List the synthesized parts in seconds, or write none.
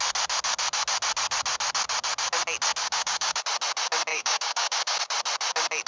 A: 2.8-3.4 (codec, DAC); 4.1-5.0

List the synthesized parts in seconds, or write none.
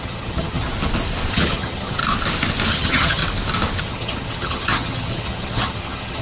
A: 0.0-0.7 (vocoder, HiFi-GAN); 1.3-2.0; 2.7-3.2; 3.8-6.2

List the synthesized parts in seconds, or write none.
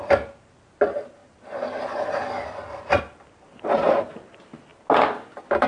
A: none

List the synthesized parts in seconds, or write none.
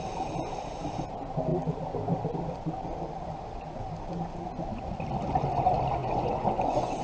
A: 6.0-7.0 (vocoder, Vocos)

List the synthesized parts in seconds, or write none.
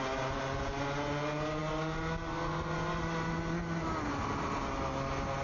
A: none